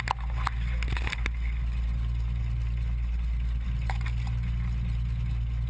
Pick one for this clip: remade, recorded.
recorded